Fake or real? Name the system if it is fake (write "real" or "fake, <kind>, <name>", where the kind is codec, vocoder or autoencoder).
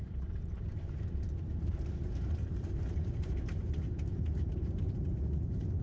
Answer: fake, vocoder, BigVGAN v2